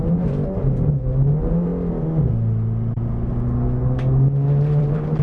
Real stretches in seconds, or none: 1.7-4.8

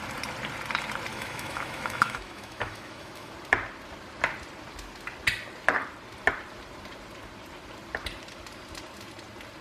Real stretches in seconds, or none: 0.0-1.1; 3.3-9.6

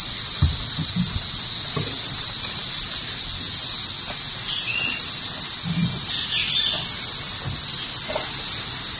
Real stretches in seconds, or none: 0.0-9.0

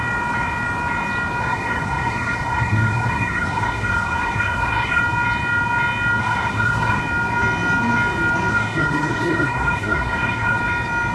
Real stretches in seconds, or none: 0.0-1.4; 5.0-6.2; 7.0-8.5; 10.6-11.1

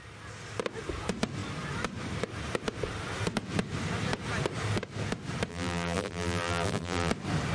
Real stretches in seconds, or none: 0.0-5.5; 7.1-7.5